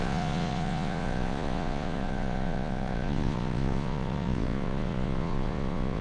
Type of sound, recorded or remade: remade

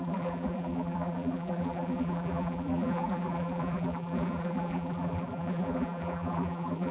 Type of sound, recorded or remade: remade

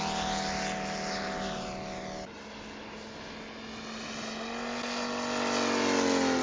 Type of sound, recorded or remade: recorded